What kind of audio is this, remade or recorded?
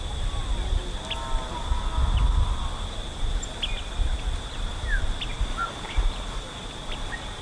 recorded